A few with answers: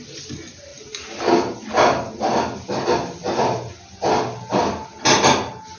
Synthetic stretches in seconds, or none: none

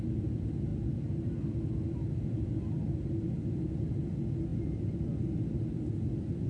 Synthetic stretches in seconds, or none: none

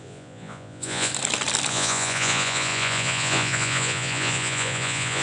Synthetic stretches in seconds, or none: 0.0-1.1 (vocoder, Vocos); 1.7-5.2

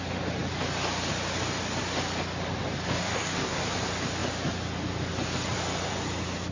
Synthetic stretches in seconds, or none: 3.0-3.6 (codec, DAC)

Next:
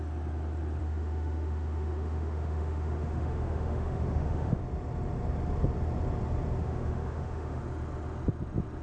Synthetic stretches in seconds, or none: 0.8-4.6 (autoencoder, DAC-VAE); 6.6-7.6

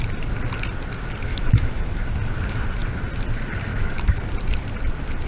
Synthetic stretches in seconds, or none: 1.3-1.8 (autoencoder, DAC-VAE); 3.7-4.3

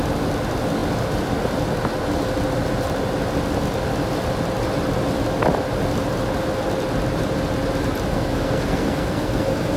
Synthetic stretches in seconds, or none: 8.1-9.8 (codec, SNAC)

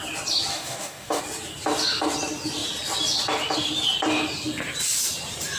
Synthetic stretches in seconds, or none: 0.5-1.2 (codec, DAC)